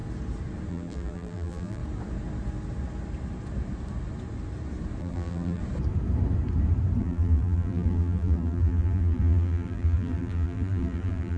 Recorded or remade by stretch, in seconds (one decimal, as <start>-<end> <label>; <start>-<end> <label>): 0.0-0.7 recorded; 0.7-1.8 remade; 1.8-5.0 recorded; 5.0-5.6 remade; 5.6-7.0 recorded; 7.0-11.4 remade